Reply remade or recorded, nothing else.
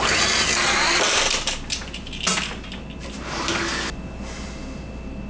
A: recorded